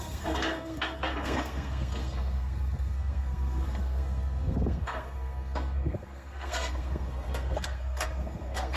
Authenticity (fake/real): fake